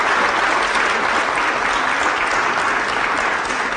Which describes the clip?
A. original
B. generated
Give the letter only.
A